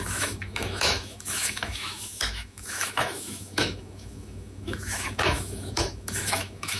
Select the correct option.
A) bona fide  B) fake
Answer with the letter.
B